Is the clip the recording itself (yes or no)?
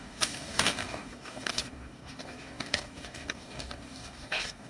no